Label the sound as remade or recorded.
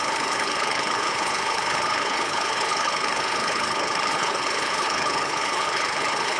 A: remade